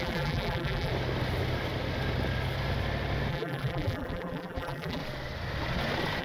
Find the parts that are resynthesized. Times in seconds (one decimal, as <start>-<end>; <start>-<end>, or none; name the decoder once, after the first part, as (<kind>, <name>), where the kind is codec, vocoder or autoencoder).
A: 0.0-0.9 (vocoder, BigVGAN v2); 3.3-5.0